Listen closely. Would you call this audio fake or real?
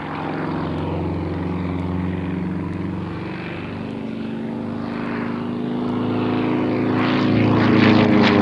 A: real